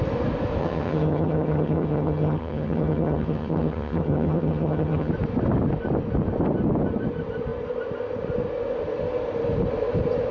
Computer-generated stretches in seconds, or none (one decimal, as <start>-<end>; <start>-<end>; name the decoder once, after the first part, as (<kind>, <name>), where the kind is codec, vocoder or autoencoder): 0.6-5.1 (vocoder, HiFi-GAN)